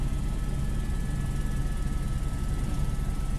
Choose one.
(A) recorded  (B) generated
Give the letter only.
A